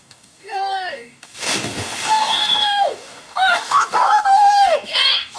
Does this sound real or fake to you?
fake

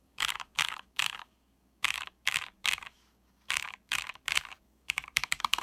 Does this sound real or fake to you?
fake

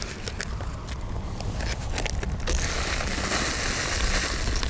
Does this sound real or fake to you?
real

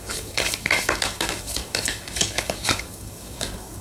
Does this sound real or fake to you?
fake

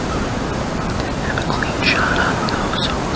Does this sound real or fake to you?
real